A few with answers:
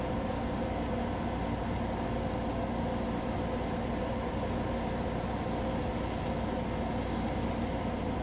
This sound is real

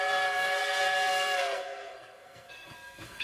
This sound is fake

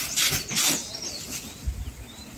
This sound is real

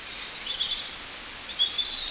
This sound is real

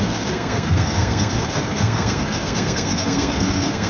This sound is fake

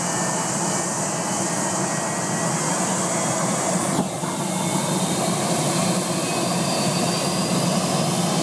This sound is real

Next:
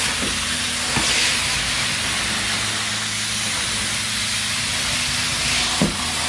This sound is real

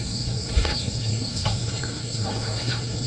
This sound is fake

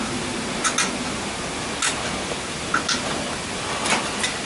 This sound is real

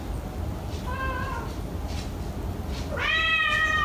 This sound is real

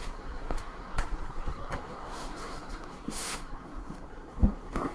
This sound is fake